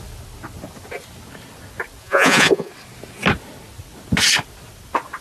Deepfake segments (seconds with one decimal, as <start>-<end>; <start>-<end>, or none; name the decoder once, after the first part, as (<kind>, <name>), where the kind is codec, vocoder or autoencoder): 2.0-2.7 (vocoder, Vocos)